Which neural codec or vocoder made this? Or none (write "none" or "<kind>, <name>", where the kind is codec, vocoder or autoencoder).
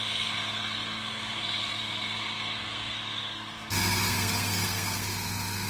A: codec, SNAC